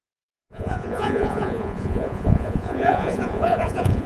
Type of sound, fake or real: fake